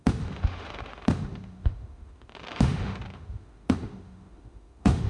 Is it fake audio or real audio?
fake